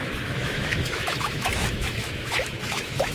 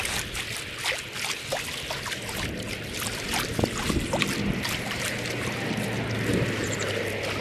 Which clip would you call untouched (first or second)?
second